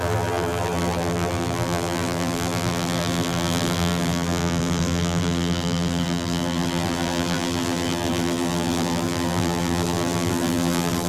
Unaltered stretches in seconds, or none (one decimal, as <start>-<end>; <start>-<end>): none